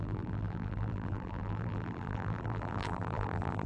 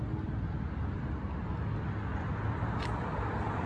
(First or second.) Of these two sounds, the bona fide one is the second